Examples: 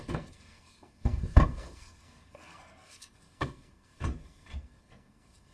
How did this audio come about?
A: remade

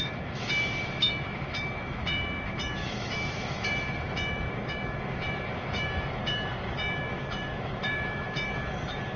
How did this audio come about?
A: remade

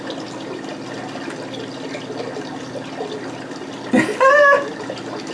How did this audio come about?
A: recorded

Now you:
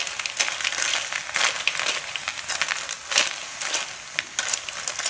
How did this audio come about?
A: recorded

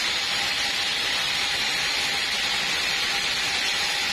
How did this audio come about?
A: recorded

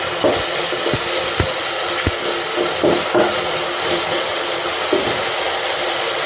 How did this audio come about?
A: recorded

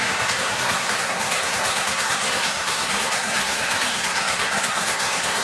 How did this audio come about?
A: remade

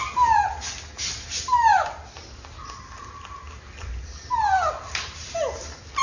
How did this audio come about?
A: recorded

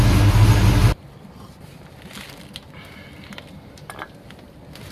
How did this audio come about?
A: recorded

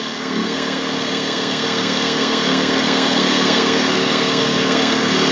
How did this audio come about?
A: remade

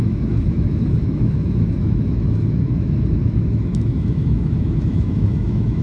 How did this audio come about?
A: remade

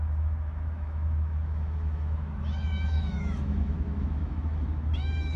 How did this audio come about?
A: remade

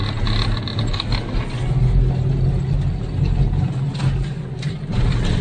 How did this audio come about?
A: recorded